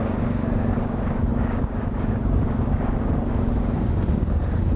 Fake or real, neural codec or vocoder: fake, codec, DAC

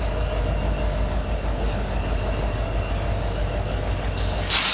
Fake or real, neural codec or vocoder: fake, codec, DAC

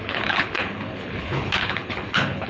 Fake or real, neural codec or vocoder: fake, codec, HILCodec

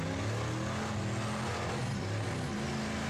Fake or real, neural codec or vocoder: real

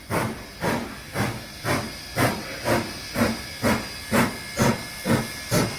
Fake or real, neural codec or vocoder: real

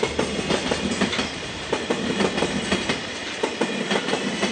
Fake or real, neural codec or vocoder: real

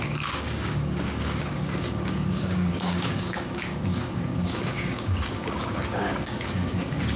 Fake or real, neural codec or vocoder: fake, codec, DAC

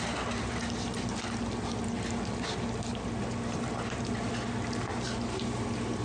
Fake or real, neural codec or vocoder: real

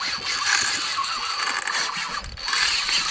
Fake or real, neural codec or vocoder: real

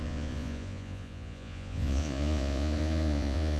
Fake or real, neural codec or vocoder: fake, vocoder, Vocos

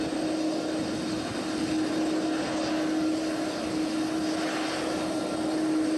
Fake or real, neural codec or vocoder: real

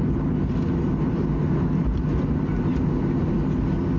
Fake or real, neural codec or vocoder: real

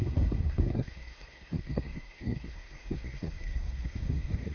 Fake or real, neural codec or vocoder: fake, codec, SNAC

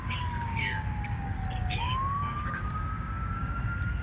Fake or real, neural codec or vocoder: fake, codec, DAC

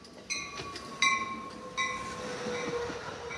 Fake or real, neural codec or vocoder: real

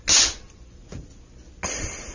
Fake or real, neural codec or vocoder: real